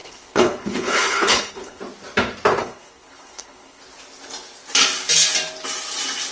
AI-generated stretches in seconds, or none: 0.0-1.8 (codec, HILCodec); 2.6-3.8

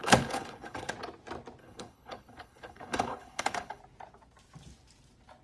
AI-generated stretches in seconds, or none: 0.0-0.9 (codec, HILCodec); 1.6-3.8

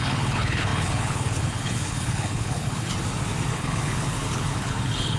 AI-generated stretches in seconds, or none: 0.0-2.9 (codec, HILCodec); 3.5-5.2

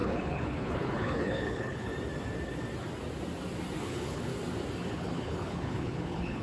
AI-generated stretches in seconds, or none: 0.0-1.9 (codec, HILCodec); 3.8-4.3; 4.9-6.4